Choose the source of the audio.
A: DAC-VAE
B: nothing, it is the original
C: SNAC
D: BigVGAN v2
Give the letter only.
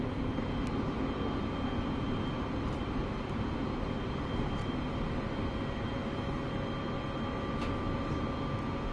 B